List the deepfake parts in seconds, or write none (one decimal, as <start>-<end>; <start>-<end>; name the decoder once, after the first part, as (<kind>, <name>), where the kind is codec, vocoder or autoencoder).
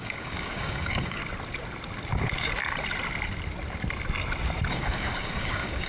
0.0-1.2 (codec, DAC); 4.7-5.9